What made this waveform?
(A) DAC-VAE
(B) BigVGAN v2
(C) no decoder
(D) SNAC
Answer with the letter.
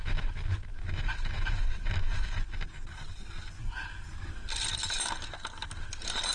C